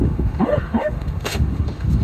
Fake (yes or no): yes